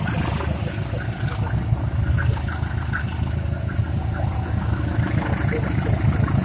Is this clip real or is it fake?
real